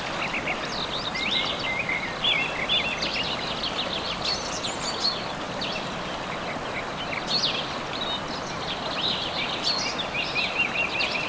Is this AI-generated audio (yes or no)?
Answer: no